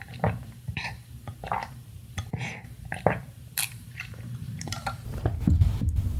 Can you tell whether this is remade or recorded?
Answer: remade